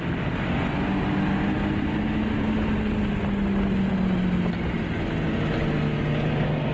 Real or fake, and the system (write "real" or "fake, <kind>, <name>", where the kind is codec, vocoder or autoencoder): real